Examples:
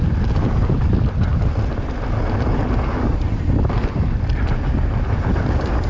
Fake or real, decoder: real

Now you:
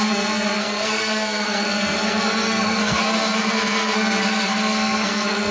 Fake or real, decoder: fake, codec, SNAC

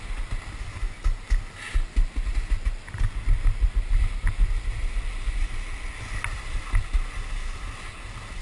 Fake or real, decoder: real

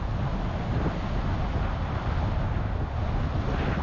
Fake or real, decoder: real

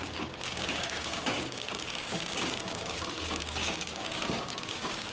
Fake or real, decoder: fake, codec, DAC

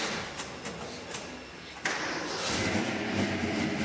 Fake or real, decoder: real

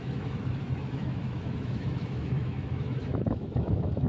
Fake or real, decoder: fake, autoencoder, DAC-VAE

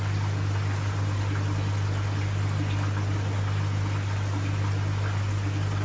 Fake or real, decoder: real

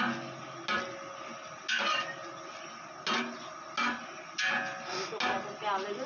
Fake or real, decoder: real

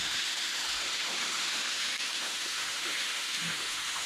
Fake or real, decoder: fake, autoencoder, DAC-VAE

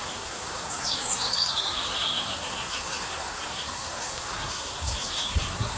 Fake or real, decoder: fake, codec, SNAC